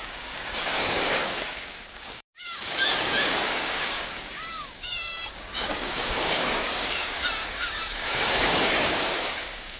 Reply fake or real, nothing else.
fake